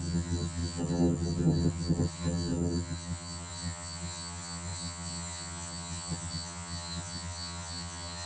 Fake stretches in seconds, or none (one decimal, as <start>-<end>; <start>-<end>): 0.0-8.3